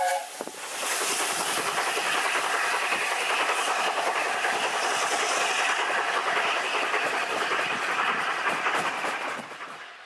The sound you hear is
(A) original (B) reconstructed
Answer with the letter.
A